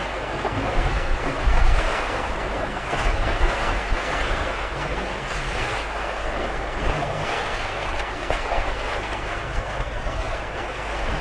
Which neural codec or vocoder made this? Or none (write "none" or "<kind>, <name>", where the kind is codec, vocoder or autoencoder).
codec, SNAC